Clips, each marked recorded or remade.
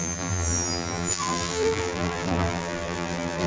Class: remade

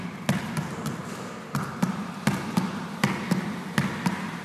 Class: recorded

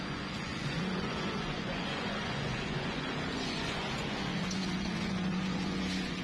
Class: remade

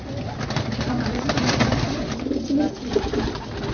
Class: recorded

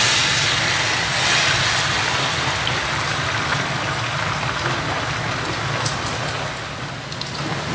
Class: recorded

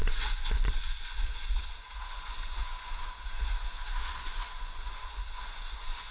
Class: remade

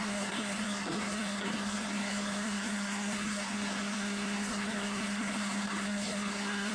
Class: remade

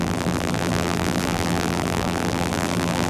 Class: remade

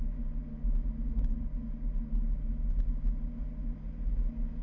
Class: recorded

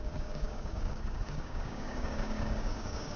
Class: remade